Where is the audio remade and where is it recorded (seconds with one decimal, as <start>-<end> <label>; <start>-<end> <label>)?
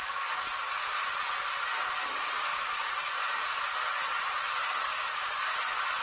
0.0-2.5 recorded; 2.5-3.6 remade; 3.6-6.0 recorded